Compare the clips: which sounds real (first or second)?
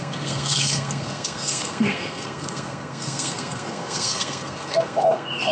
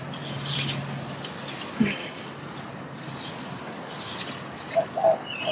second